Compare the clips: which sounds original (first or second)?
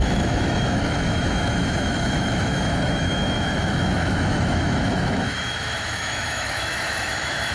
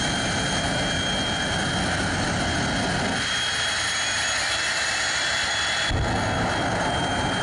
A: second